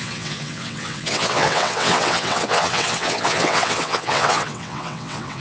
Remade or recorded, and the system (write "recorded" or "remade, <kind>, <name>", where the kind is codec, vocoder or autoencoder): remade, vocoder, WaveNeXt